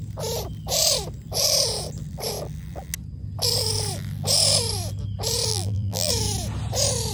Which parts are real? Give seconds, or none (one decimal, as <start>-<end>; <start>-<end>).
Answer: 0.0-5.5; 6.1-7.1